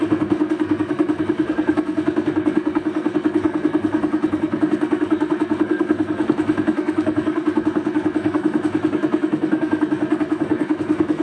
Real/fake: fake